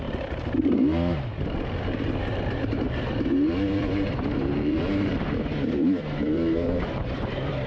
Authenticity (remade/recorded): remade